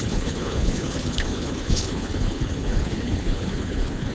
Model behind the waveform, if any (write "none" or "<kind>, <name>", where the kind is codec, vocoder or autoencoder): codec, HILCodec